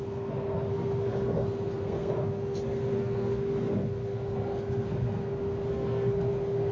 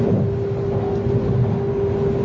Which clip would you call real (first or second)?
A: second